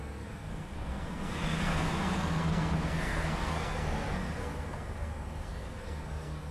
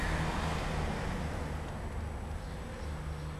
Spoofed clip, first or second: first